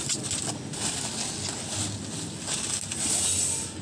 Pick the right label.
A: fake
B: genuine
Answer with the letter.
B